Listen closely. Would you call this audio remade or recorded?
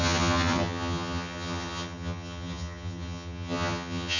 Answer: remade